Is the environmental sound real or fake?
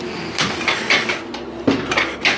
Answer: real